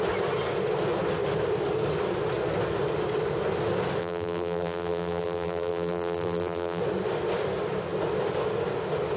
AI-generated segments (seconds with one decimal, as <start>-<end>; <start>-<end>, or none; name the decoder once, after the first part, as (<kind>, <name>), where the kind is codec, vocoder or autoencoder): 4.0-6.8 (vocoder, BigVGAN v2)